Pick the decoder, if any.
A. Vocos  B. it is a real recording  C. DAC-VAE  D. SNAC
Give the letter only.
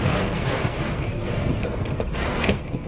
D